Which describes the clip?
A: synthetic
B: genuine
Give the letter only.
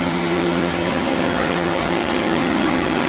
A